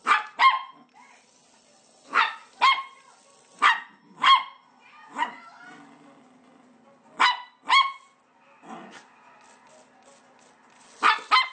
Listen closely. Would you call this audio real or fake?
real